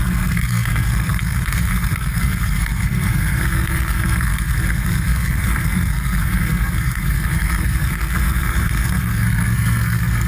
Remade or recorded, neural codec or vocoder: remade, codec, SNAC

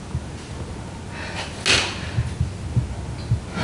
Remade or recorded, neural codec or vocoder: recorded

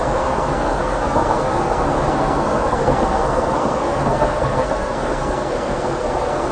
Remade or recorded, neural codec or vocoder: remade, codec, SNAC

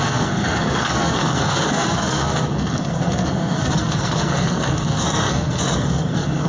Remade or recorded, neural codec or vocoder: remade, codec, SNAC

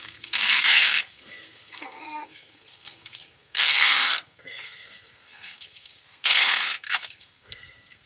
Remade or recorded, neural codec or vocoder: remade, codec, SNAC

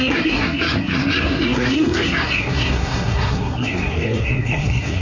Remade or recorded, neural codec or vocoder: remade, codec, SNAC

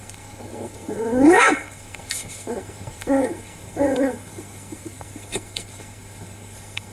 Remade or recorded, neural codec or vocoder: remade, codec, SNAC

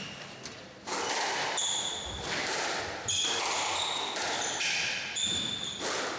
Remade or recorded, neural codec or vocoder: recorded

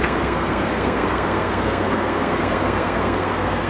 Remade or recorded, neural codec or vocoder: remade, codec, SNAC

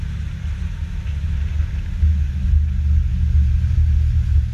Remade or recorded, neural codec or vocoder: recorded